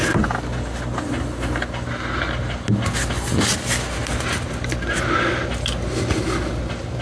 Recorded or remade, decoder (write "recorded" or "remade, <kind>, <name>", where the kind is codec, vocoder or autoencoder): recorded